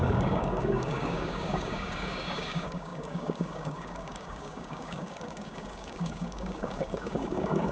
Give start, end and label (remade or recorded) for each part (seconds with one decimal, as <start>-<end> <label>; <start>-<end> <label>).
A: 0.0-7.7 remade